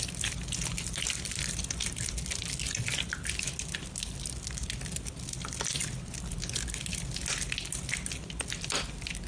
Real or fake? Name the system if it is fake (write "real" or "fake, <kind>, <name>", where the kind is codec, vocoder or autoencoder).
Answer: real